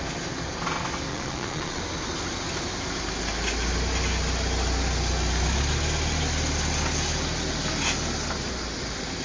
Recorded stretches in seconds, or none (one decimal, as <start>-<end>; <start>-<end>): 0.0-1.1; 1.8-9.2